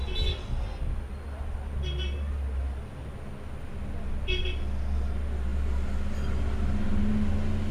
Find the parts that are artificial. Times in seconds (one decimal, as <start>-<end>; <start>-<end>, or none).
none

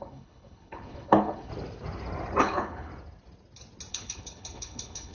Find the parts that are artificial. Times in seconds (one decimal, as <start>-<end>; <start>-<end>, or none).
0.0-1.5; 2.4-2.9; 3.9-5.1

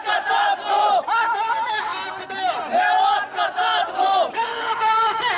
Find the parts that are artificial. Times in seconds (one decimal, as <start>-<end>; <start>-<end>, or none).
0.0-0.5; 1.3-1.9